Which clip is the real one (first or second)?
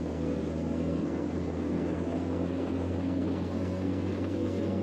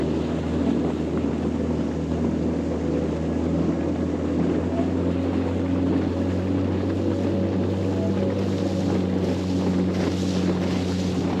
second